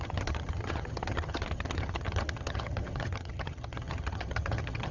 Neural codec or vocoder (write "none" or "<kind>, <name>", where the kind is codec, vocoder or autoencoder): vocoder, HiFi-GAN